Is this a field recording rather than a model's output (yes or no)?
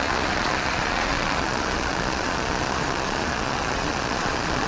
no